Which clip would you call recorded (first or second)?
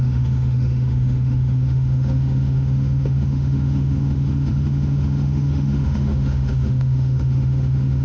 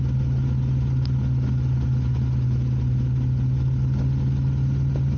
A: second